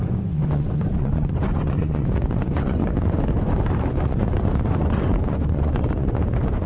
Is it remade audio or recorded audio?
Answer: remade